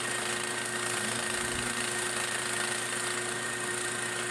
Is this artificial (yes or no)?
no